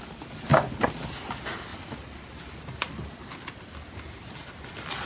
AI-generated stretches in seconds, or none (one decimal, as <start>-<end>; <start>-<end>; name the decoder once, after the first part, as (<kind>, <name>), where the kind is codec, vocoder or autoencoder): none